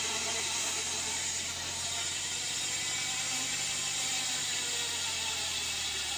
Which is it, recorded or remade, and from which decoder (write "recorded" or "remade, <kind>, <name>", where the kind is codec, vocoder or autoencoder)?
recorded